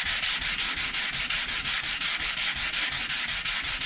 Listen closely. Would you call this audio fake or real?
real